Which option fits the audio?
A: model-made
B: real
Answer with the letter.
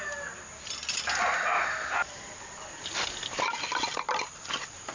B